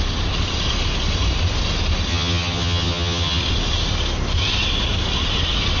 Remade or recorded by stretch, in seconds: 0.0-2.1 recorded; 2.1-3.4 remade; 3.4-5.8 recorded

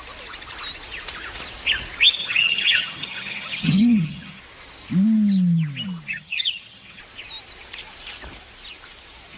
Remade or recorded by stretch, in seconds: 0.0-2.2 recorded; 2.2-4.4 remade; 4.4-6.1 recorded; 6.1-7.0 remade; 7.0-9.4 recorded